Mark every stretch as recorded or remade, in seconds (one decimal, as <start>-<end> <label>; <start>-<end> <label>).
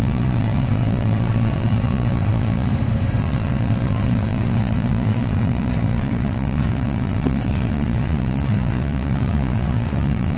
0.0-2.7 remade; 2.7-3.2 recorded; 3.2-10.4 remade